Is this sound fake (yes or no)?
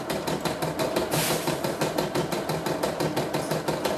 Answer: no